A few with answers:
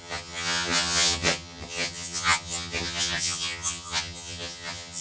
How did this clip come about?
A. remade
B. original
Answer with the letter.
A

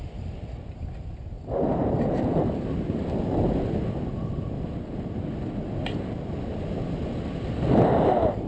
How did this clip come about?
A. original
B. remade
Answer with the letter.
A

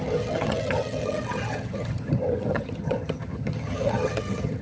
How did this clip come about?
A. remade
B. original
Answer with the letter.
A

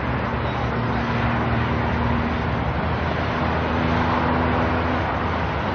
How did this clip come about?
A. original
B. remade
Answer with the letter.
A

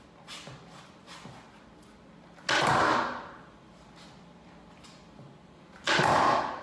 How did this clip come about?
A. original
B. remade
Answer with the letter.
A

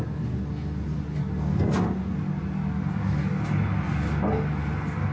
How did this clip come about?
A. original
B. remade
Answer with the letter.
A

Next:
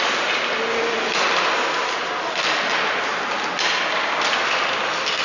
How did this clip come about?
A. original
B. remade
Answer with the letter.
A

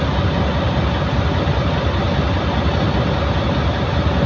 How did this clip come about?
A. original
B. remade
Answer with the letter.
A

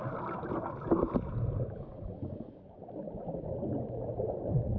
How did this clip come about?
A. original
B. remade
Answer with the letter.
A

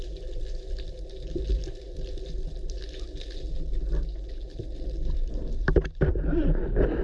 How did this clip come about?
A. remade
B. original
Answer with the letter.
B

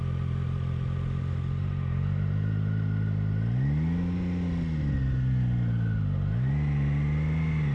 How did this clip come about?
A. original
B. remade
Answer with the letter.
A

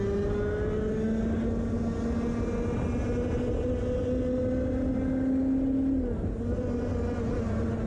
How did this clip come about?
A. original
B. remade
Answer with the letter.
A